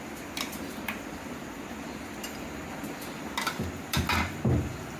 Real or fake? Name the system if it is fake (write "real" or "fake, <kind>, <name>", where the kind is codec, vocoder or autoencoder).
real